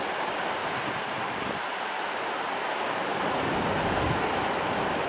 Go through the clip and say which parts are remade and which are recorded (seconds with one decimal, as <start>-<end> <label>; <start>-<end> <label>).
0.0-0.6 recorded; 0.6-2.6 remade; 2.6-5.1 recorded